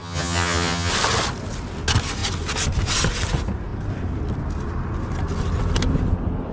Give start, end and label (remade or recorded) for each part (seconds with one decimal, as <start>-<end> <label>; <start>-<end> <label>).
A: 0.0-0.9 remade; 0.9-6.5 recorded